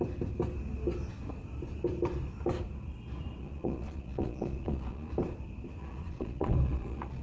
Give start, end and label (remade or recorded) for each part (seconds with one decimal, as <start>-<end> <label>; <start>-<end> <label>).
0.0-3.4 recorded; 3.4-5.1 remade; 5.1-5.8 recorded; 5.8-7.2 remade